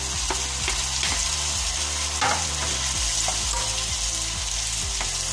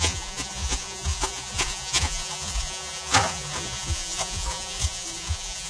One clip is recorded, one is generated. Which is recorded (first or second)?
first